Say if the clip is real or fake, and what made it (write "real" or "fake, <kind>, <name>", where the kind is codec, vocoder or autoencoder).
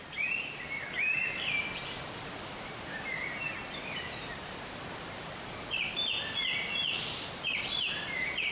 real